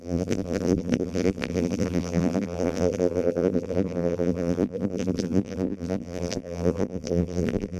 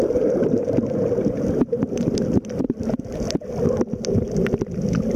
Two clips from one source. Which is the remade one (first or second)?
first